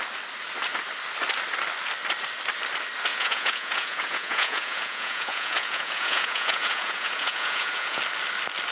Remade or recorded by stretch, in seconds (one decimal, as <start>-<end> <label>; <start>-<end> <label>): 0.0-3.1 recorded; 3.1-8.0 remade; 8.0-8.7 recorded